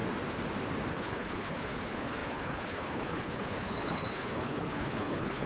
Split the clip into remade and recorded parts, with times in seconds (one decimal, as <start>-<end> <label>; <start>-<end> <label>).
0.0-0.9 recorded; 0.9-5.5 remade